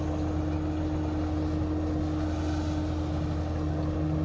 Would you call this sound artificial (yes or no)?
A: no